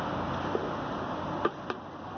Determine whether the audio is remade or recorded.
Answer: recorded